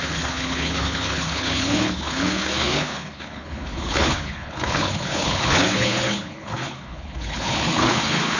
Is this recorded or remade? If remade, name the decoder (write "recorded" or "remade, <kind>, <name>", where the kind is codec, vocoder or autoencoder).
remade, codec, HILCodec